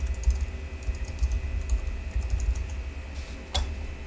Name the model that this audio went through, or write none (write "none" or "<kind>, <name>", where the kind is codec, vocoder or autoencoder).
none